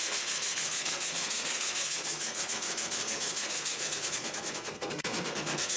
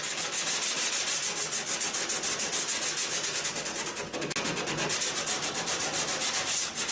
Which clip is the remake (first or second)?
first